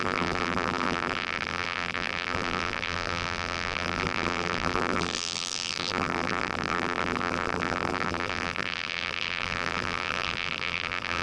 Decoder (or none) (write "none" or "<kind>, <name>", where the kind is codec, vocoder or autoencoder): vocoder, BigVGAN v2